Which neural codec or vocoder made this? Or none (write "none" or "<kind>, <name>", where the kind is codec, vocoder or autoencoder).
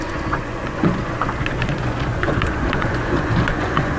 vocoder, Vocos